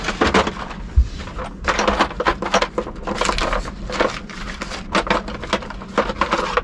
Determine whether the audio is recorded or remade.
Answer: recorded